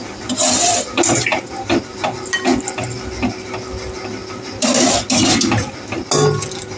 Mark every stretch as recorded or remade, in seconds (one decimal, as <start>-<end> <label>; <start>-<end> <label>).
0.0-6.8 recorded